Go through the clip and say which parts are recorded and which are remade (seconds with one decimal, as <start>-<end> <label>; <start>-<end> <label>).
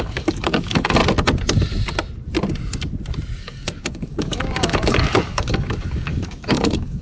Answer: 0.0-1.0 remade; 1.0-3.4 recorded; 3.4-7.0 remade